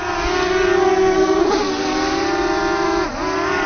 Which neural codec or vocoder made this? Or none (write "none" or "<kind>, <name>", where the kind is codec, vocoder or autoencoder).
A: vocoder, BigVGAN v2